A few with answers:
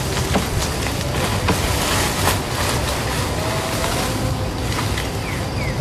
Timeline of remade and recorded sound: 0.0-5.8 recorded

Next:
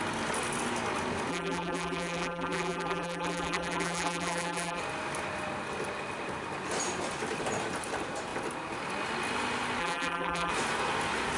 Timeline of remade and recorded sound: 0.0-1.3 recorded; 1.3-4.8 remade; 4.8-9.8 recorded; 9.8-10.5 remade; 10.5-11.4 recorded

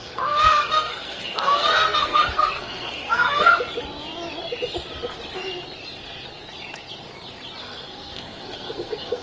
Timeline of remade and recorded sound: 0.0-3.5 remade; 3.5-7.6 recorded; 7.6-9.2 remade

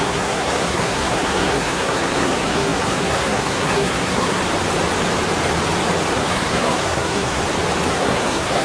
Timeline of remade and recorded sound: 0.0-4.4 remade; 4.4-6.1 recorded; 6.1-7.4 remade; 7.4-7.9 recorded; 7.9-8.6 remade